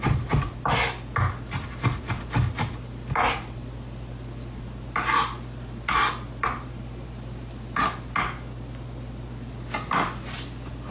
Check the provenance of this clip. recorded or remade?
recorded